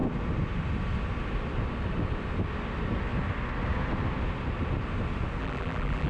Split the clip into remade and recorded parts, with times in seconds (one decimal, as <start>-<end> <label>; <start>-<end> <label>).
0.0-5.4 recorded; 5.4-6.1 remade